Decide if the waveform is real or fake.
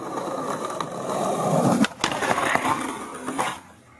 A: real